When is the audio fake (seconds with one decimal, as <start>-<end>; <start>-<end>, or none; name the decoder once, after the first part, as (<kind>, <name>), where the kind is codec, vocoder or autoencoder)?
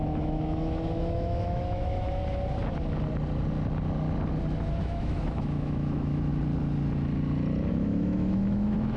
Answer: 0.0-2.2 (autoencoder, DAC-VAE); 4.7-6.3; 7.7-9.0